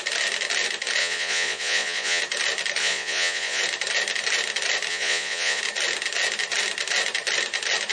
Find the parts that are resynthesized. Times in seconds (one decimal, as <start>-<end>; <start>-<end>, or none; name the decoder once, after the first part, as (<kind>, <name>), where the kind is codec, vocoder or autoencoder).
1.0-2.2 (vocoder, Vocos); 2.8-3.6; 4.9-5.6